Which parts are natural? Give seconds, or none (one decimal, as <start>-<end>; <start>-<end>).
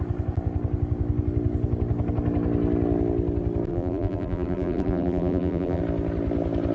0.0-3.7; 5.8-6.7